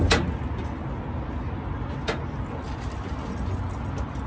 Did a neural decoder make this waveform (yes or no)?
no